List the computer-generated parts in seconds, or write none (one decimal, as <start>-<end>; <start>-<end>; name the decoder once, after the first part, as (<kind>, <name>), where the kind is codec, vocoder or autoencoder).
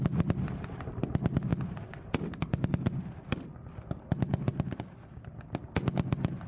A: none